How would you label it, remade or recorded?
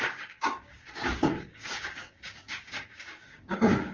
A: remade